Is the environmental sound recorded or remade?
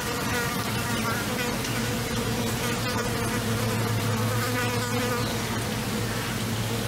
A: recorded